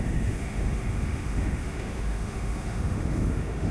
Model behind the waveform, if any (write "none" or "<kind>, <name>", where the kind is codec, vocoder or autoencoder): autoencoder, DAC-VAE